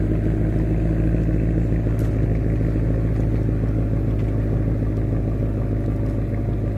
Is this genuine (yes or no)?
yes